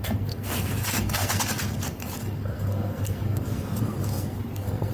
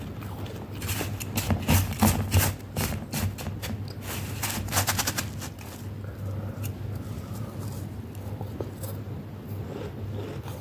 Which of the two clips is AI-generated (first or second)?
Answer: first